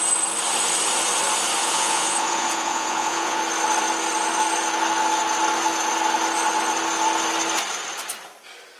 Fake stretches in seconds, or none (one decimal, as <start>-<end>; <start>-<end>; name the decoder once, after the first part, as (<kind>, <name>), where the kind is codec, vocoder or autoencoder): 1.6-3.4 (vocoder, Vocos)